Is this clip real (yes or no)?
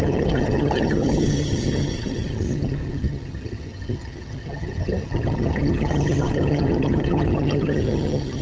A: no